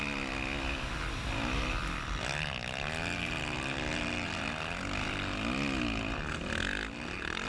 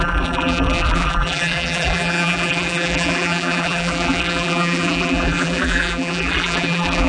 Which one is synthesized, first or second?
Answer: second